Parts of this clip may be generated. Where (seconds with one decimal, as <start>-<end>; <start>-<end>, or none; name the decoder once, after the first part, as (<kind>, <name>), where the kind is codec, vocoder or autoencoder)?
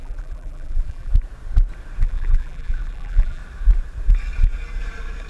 0.0-1.1 (vocoder, BigVGAN v2); 2.0-3.4